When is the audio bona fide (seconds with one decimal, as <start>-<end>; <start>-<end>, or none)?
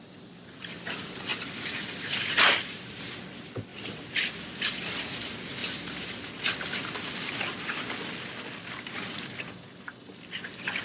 0.0-10.8